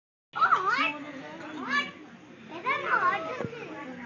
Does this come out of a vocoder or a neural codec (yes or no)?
no